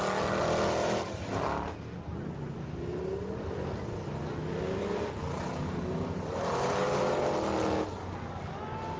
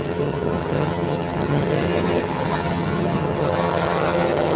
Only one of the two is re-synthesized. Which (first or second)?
second